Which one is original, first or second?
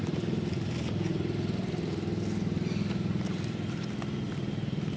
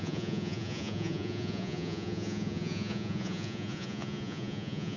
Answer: first